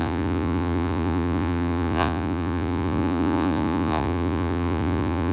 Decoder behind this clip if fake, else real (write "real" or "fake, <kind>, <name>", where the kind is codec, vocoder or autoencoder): fake, vocoder, Vocos